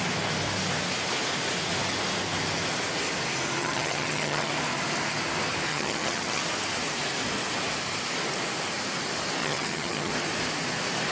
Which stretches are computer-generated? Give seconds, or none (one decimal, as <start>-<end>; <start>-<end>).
3.6-4.5; 5.7-6.4; 9.4-10.1